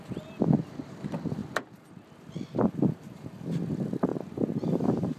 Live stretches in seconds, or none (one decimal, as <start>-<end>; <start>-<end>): 0.0-5.2